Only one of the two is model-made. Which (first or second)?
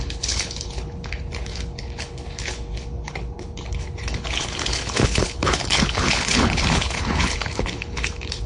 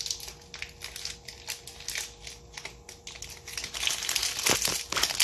first